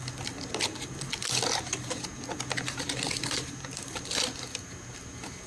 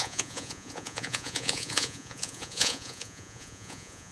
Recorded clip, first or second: first